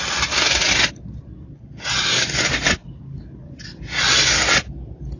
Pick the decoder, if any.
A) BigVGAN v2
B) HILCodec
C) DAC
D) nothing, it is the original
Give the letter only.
D